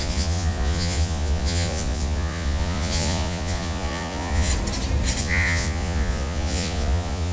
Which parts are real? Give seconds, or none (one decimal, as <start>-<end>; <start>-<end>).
4.5-5.2